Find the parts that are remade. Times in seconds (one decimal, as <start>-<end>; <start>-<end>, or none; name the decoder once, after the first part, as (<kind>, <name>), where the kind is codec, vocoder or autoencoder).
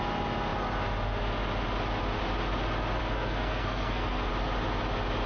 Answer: 3.0-4.3 (codec, SNAC)